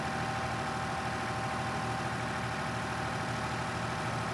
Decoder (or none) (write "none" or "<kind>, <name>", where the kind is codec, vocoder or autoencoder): none